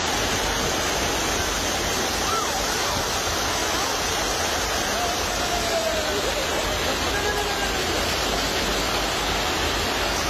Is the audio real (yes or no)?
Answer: yes